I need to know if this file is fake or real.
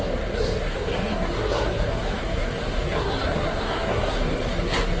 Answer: fake